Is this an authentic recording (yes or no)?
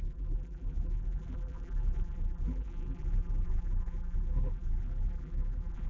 no